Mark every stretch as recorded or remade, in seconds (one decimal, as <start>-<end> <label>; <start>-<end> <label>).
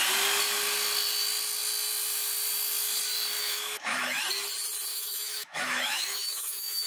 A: 0.0-3.4 recorded; 3.4-4.2 remade; 4.2-4.9 recorded; 4.9-6.9 remade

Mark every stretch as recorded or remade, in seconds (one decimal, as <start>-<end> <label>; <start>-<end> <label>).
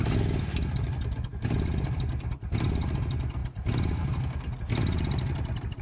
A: 0.0-5.8 recorded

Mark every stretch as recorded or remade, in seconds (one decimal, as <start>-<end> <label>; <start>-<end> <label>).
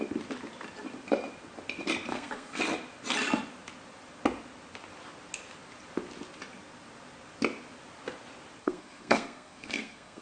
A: 0.0-2.1 recorded; 2.1-2.6 remade; 2.6-8.6 recorded; 8.6-10.2 remade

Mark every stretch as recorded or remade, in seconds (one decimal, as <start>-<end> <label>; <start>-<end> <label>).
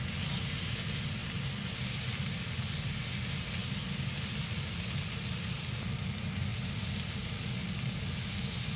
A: 0.0-8.8 recorded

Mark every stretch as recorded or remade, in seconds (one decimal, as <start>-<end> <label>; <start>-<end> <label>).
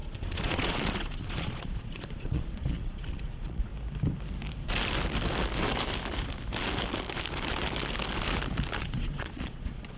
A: 0.0-3.7 remade; 3.7-8.8 recorded; 8.8-10.0 remade